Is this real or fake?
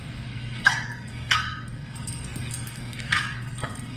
fake